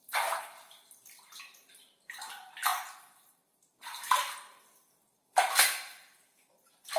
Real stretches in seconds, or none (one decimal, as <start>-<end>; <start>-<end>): 0.0-5.1; 6.0-7.0